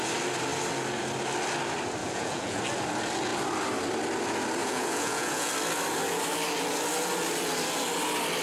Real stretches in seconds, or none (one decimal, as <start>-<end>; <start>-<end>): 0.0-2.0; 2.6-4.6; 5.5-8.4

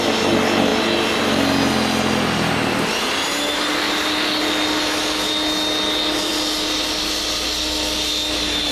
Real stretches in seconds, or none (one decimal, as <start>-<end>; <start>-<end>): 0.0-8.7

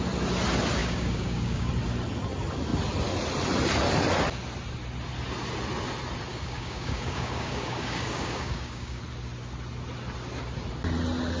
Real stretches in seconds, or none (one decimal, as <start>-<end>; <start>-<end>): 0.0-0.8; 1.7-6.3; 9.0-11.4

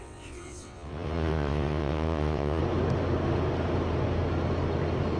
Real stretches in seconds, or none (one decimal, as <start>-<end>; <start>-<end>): 2.6-5.2

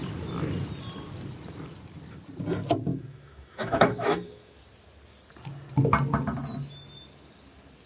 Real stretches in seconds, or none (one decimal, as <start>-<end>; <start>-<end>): 0.0-2.9; 4.6-7.9